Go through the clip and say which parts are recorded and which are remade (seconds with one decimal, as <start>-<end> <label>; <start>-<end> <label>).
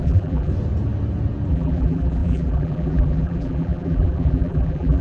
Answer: 0.0-0.5 remade; 0.5-1.5 recorded; 1.5-5.0 remade